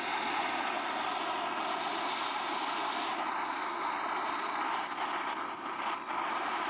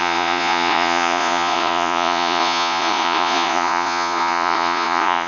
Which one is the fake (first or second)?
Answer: second